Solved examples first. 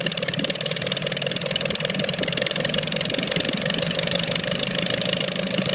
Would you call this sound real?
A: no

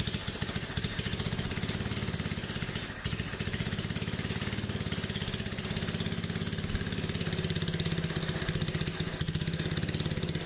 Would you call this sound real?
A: yes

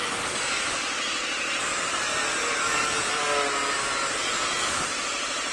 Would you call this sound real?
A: no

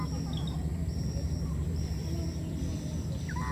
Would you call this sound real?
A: yes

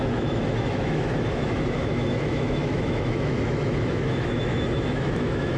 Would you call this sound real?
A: no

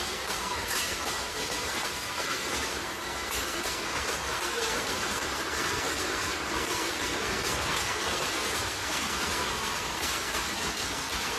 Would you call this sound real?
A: no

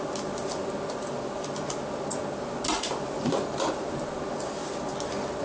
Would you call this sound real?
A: yes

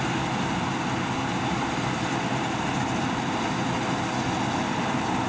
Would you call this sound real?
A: yes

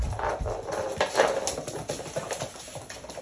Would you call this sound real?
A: yes